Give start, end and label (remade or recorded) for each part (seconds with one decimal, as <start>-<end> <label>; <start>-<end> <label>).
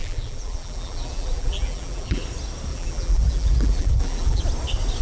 0.0-2.2 remade; 2.2-2.7 recorded; 2.7-4.4 remade; 4.4-5.0 recorded